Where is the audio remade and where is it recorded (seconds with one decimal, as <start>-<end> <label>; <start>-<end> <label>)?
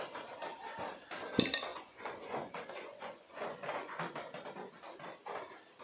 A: 0.0-1.7 recorded; 1.7-4.0 remade; 4.0-5.8 recorded